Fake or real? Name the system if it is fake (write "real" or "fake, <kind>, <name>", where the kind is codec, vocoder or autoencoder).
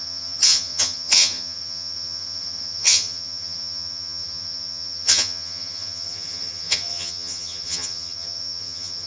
fake, vocoder, HiFi-GAN